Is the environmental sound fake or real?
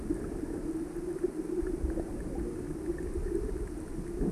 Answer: real